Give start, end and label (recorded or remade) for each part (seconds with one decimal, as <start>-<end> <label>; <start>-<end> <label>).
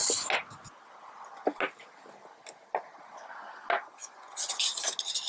0.0-4.0 recorded; 4.0-4.7 remade; 4.7-5.3 recorded